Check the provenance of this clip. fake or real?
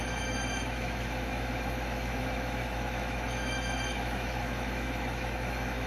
fake